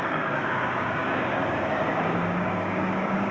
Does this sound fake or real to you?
fake